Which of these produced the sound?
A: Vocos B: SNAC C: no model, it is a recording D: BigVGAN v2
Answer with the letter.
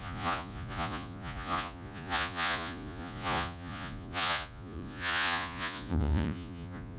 A